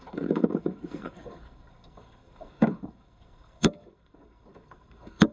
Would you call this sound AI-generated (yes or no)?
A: yes